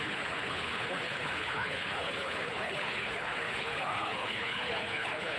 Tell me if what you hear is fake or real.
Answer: fake